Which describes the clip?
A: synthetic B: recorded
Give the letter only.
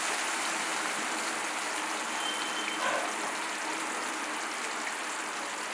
B